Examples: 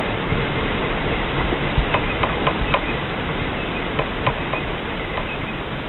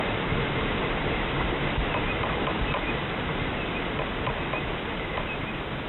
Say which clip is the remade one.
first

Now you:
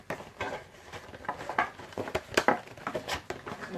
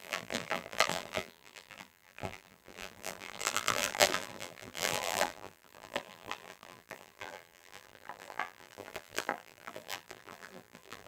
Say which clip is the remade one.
second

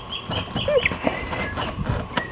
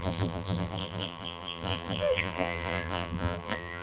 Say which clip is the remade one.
second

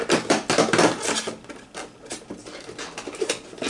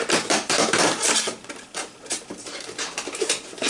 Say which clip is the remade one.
second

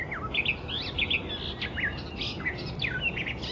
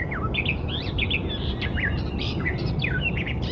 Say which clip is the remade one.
second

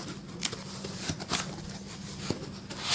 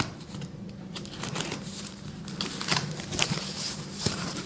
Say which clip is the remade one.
second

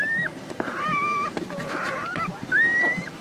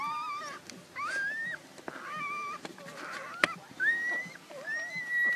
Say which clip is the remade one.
first